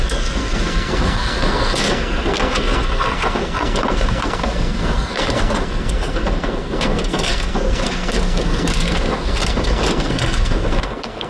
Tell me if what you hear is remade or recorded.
remade